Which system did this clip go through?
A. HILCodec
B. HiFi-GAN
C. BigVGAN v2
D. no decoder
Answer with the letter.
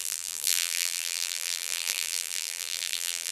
C